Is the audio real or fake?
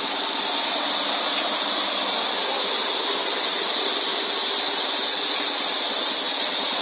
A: real